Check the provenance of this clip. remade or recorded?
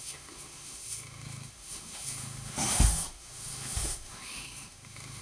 remade